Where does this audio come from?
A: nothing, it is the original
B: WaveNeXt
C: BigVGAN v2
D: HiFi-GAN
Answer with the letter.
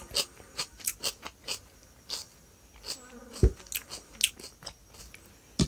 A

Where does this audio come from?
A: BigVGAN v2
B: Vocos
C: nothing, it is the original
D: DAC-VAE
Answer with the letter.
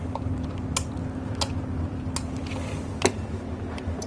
C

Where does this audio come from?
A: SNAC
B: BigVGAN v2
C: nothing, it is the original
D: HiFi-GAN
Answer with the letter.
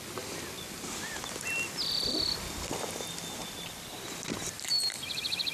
C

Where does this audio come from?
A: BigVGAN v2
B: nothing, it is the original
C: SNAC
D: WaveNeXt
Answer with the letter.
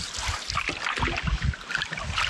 B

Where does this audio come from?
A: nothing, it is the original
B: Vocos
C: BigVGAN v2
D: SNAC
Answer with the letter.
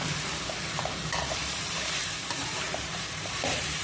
C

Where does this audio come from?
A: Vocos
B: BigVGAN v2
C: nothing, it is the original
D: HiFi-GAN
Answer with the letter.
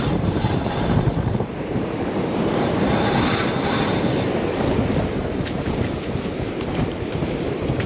B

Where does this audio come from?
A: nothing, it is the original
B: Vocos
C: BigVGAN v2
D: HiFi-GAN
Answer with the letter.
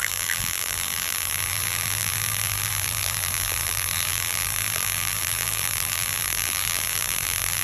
C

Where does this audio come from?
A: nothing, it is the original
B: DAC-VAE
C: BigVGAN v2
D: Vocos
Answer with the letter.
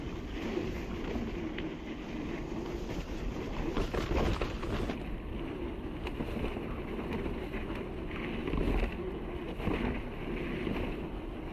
A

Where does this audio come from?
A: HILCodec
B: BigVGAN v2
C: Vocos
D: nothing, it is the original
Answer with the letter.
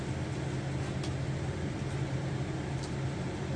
D